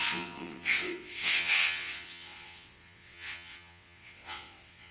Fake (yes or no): yes